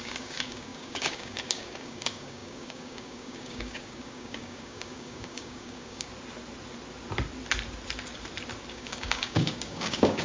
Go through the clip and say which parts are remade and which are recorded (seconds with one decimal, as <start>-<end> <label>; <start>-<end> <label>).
0.0-6.1 remade; 6.1-8.7 recorded; 8.7-10.2 remade